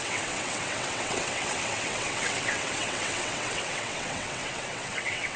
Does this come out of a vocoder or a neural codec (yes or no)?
yes